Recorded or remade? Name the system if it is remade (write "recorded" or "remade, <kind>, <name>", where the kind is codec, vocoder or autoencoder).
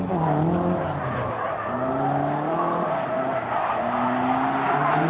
recorded